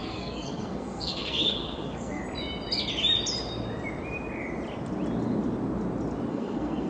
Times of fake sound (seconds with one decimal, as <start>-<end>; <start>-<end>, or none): 0.0-2.2; 6.3-6.9

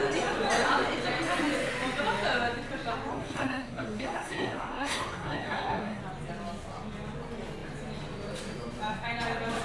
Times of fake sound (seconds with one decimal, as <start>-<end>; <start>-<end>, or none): 3.1-6.0

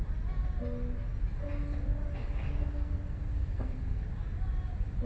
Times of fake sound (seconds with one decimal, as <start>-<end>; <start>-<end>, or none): 2.2-4.1

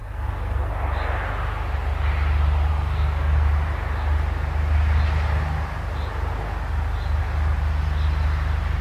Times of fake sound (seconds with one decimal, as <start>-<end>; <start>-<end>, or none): 0.0-0.7; 2.7-3.5

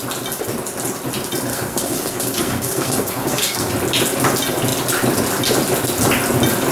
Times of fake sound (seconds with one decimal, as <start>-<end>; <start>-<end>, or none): 1.5-3.7

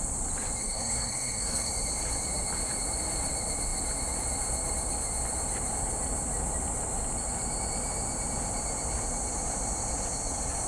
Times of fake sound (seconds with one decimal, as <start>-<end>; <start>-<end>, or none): 0.6-1.7